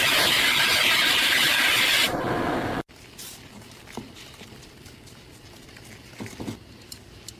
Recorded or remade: recorded